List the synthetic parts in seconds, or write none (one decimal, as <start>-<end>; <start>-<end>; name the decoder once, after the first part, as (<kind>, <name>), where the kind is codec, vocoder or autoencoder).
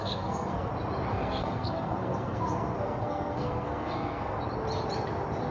0.0-0.7 (codec, SNAC); 1.1-4.4